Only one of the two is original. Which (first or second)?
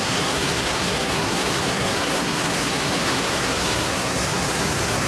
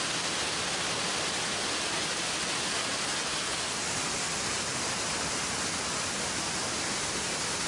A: second